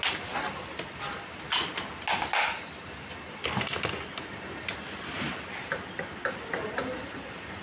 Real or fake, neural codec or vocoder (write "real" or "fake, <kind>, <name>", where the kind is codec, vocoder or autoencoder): real